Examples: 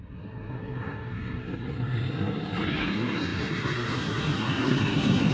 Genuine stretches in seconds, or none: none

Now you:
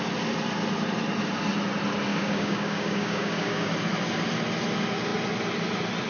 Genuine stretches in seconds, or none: 0.0-2.1; 3.7-6.1